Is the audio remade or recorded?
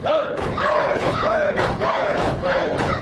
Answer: remade